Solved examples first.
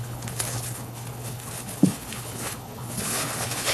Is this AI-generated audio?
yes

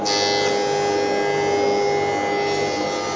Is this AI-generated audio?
no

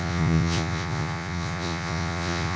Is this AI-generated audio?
yes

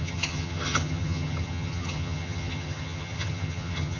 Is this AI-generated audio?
yes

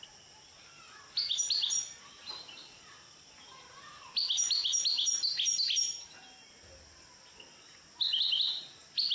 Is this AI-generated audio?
no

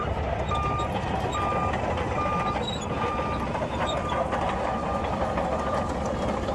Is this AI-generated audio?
no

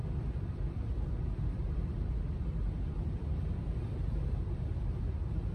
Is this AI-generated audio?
yes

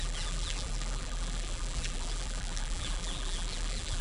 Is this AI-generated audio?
yes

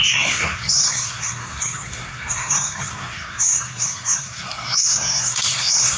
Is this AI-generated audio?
yes